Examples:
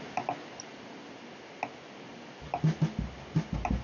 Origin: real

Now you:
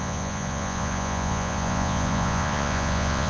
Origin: fake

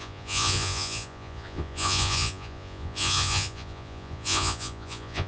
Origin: fake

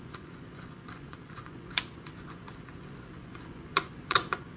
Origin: fake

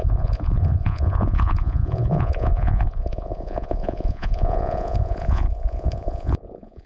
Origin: fake